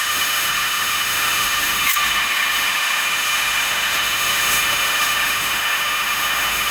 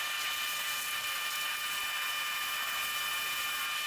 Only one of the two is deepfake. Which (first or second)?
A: first